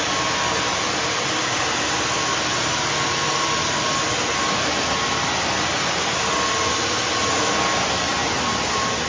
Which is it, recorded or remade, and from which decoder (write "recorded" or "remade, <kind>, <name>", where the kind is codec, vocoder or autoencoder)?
recorded